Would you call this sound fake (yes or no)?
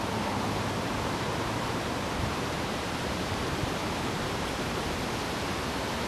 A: yes